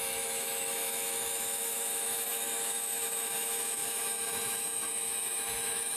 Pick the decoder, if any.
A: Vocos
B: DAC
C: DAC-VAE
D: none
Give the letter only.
C